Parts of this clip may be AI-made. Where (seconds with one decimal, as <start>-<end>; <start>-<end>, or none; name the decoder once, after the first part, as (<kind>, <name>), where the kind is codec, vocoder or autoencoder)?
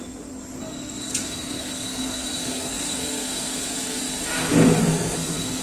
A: 0.6-4.0 (codec, SNAC); 4.8-5.6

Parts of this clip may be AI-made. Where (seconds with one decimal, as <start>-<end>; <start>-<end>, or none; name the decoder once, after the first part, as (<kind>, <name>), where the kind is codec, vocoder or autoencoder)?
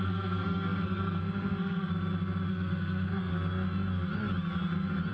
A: 0.0-1.9 (codec, SNAC); 2.5-3.3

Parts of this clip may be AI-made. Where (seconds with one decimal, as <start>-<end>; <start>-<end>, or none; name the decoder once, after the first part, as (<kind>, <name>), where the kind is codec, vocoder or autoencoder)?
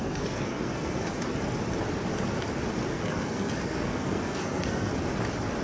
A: 0.0-1.2 (codec, SNAC); 2.9-4.9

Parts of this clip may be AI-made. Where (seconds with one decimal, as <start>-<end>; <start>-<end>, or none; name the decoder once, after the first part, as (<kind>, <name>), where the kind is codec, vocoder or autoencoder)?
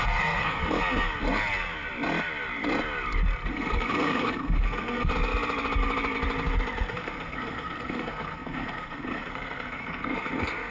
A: 0.0-0.6 (codec, SNAC); 3.5-5.1; 6.9-10.7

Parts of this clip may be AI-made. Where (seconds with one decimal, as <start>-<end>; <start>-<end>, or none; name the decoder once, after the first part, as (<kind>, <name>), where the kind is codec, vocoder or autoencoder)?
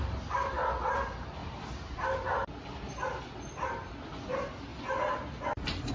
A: none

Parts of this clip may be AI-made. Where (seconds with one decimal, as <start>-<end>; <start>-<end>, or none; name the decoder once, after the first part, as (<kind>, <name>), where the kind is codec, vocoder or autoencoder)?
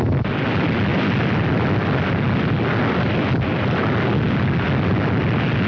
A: none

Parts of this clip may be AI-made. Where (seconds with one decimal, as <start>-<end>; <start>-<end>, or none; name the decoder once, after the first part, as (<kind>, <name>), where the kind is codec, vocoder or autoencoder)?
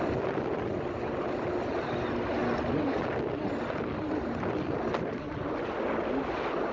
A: none